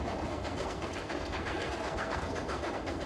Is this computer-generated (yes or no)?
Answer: yes